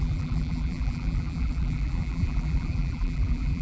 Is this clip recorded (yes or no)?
no